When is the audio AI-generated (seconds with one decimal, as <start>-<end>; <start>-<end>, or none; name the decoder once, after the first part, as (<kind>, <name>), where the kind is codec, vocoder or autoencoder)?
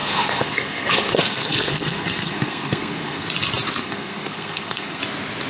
0.0-3.3 (codec, SNAC); 3.8-5.0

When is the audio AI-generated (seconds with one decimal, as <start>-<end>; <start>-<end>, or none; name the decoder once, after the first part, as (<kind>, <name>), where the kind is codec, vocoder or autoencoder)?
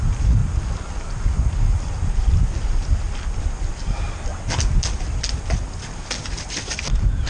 none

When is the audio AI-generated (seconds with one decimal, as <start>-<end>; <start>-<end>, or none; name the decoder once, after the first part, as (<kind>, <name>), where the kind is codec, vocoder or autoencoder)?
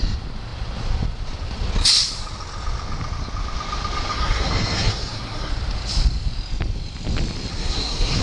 4.1-5.5 (codec, SNAC); 7.5-8.2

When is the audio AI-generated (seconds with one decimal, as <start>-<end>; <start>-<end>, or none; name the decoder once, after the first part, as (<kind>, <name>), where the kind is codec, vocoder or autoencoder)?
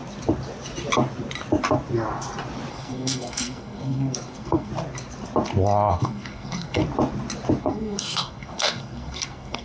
2.7-4.7 (codec, SNAC); 5.9-6.8; 7.6-9.6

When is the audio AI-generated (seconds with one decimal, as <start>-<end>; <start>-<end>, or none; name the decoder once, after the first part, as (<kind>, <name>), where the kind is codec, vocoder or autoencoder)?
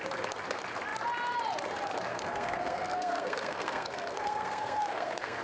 2.1-5.4 (codec, SNAC)